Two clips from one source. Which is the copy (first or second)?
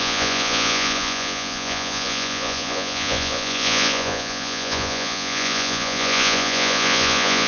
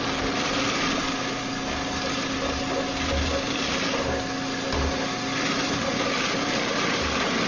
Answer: first